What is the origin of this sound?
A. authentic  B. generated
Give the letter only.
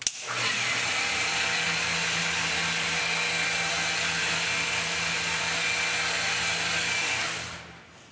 A